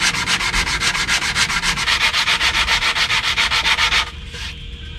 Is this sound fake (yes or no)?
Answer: no